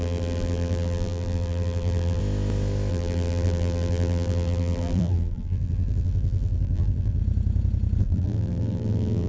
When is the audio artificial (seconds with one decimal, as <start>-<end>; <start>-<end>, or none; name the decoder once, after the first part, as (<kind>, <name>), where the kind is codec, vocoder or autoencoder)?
0.0-2.2 (vocoder, BigVGAN v2); 2.9-7.2; 8.0-9.3